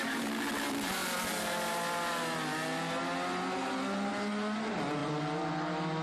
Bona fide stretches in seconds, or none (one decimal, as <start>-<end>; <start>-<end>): 0.0-5.0; 5.5-6.0